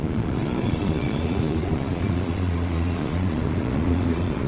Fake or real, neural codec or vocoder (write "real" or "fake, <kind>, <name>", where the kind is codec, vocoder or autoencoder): fake, vocoder, Vocos